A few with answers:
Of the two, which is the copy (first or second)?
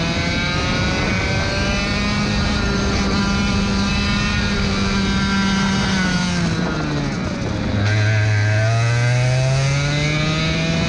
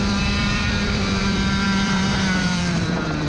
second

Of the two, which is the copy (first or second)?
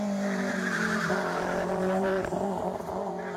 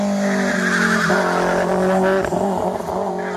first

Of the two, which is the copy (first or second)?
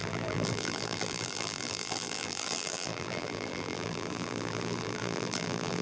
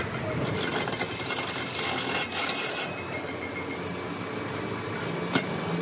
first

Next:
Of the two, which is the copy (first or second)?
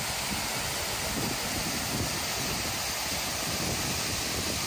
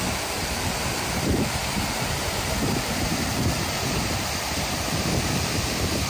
second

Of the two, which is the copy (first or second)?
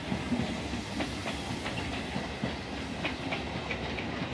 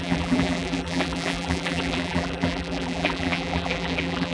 second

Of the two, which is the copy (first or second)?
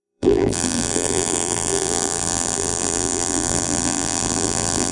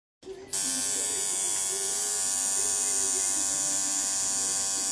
first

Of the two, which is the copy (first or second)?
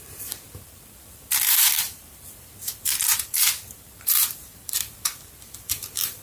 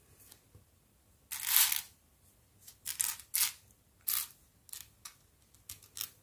first